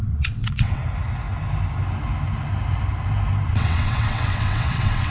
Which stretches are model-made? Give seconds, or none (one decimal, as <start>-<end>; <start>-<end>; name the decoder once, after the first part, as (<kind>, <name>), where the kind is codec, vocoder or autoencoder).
0.0-0.8 (vocoder, WaveNeXt); 3.5-5.1